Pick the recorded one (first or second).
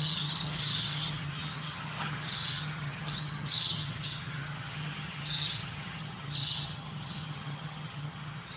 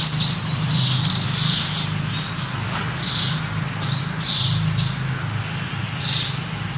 second